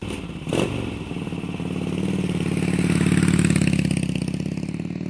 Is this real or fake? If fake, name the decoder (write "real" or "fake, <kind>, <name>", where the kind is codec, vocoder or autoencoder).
real